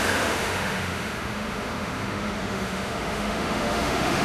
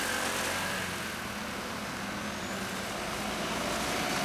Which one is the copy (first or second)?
first